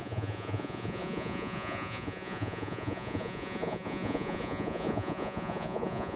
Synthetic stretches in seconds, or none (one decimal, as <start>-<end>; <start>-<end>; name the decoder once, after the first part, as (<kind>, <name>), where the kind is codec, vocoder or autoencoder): 0.0-6.2 (vocoder, Vocos)